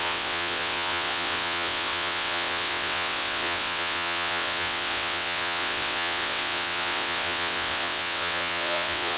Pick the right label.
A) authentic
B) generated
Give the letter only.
B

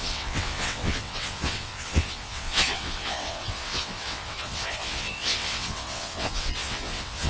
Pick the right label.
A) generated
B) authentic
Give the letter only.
A